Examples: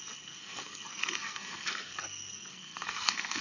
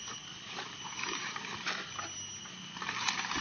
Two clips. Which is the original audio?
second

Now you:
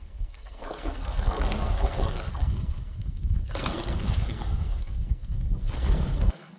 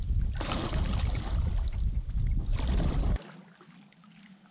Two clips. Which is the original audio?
second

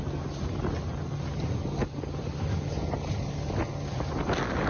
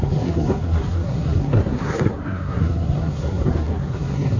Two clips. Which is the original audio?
first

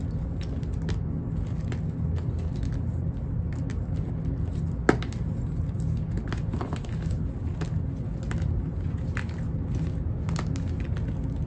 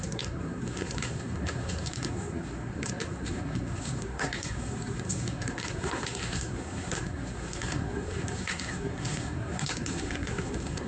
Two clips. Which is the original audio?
first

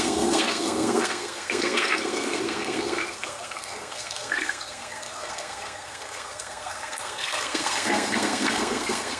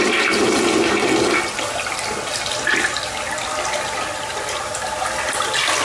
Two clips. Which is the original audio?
second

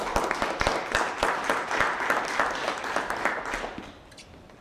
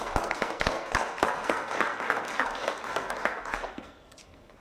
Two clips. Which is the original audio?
first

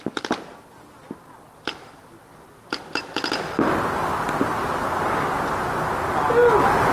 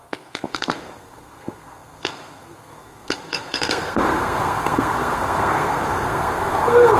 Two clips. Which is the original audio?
first